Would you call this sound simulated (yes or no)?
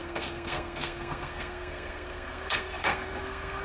yes